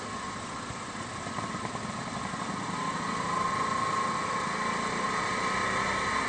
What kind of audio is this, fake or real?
real